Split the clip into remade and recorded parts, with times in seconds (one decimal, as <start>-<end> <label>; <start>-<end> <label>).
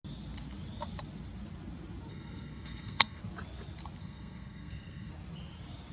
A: 0.0-2.1 recorded; 2.1-3.2 remade; 3.2-4.0 recorded; 4.0-5.1 remade; 5.1-5.9 recorded